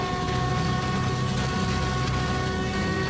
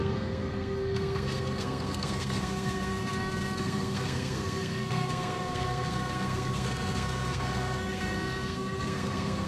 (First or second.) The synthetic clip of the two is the second